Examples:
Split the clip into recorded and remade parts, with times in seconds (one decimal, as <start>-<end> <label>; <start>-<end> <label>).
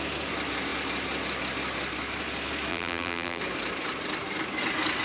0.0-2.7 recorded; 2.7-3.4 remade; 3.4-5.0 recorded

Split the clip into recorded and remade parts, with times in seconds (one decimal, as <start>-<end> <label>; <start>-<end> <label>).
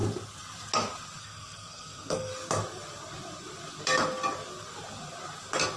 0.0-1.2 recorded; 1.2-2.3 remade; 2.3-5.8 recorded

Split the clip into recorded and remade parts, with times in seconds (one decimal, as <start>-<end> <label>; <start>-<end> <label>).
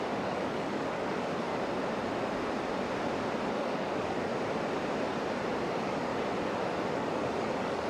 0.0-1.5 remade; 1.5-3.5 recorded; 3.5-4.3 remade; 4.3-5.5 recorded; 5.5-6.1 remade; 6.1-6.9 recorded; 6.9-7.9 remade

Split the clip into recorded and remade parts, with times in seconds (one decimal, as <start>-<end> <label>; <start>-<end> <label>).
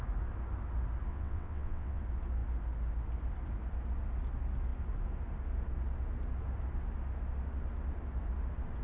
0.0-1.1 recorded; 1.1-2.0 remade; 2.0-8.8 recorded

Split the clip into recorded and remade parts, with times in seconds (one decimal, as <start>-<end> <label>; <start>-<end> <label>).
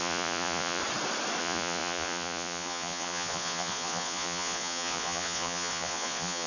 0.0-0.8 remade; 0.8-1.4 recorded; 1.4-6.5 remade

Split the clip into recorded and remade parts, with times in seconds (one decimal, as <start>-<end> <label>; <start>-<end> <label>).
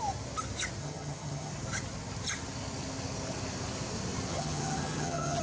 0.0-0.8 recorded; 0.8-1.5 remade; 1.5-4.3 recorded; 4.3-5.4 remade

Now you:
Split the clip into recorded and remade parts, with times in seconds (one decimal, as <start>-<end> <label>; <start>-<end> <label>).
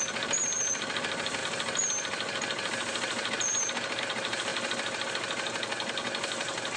0.0-6.8 recorded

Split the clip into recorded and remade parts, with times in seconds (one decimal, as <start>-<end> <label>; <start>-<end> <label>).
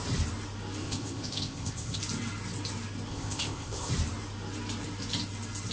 0.0-0.8 recorded; 0.8-2.0 remade; 2.0-3.1 recorded; 3.1-3.9 remade; 3.9-5.7 recorded